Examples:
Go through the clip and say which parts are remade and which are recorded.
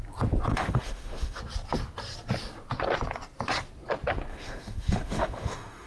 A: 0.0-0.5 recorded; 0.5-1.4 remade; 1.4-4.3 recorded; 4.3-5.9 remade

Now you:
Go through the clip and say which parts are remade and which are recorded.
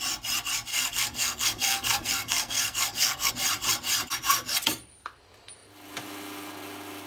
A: 0.0-0.7 recorded; 0.7-3.3 remade; 3.3-7.1 recorded